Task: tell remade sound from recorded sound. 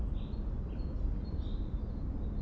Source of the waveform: recorded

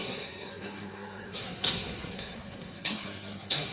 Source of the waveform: remade